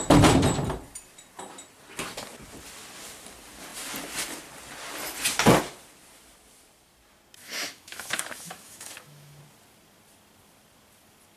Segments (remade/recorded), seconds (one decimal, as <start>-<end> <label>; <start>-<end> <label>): 0.0-7.4 recorded; 7.4-9.4 remade; 9.4-11.4 recorded

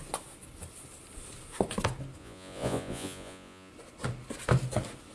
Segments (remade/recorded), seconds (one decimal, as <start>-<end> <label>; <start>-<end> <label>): 0.0-2.2 recorded; 2.2-3.7 remade; 3.7-5.1 recorded

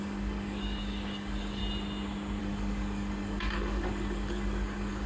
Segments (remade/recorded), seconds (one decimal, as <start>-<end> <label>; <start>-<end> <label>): 0.0-1.6 remade; 1.6-2.4 recorded; 2.4-5.1 remade

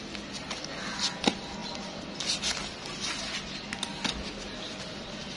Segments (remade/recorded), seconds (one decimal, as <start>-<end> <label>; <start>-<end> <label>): 0.0-5.4 recorded